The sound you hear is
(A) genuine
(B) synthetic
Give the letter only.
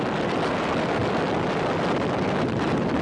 A